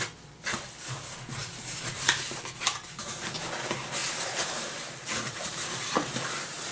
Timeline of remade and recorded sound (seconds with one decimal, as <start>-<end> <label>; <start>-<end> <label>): 0.0-1.4 recorded; 1.4-2.4 remade; 2.4-4.0 recorded; 4.0-4.9 remade; 4.9-6.7 recorded